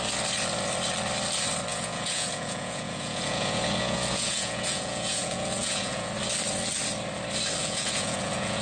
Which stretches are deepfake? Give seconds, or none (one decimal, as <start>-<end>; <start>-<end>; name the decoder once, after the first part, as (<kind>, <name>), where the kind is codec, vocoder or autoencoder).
1.7-6.1 (vocoder, Vocos); 7.6-8.6